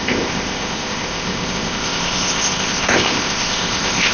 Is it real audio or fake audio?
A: fake